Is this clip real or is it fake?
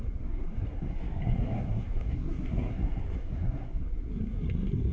fake